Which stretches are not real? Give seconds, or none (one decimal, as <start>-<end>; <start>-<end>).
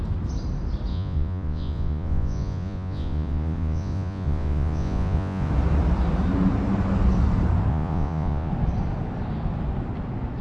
0.9-5.5; 7.7-8.5